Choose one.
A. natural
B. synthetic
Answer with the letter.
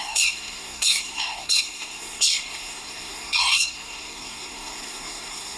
B